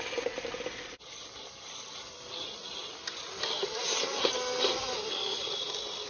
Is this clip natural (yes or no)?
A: yes